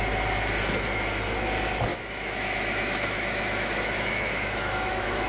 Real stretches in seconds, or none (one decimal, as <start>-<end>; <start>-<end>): 0.0-1.9